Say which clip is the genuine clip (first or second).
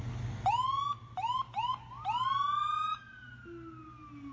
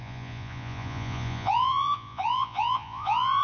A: first